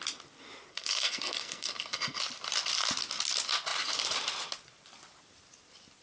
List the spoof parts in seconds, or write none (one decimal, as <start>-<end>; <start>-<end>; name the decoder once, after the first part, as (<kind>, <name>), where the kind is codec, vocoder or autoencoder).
0.7-2.2 (codec, SNAC)